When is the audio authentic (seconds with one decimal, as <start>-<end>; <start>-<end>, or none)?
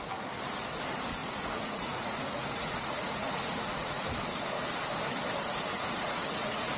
0.0-1.2; 4.1-5.7